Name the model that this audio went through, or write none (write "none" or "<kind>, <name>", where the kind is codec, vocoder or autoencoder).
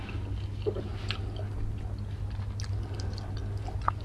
none